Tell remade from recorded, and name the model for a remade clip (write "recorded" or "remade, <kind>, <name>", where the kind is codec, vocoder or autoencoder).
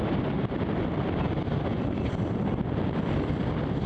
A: remade, vocoder, BigVGAN v2